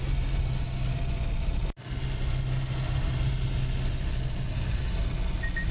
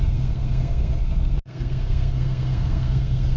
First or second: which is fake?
second